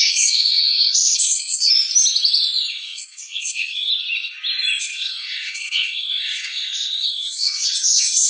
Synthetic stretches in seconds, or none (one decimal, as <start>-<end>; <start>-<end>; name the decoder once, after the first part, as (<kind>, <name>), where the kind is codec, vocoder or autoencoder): 0.0-1.7 (codec, SNAC); 2.7-3.9; 4.8-8.3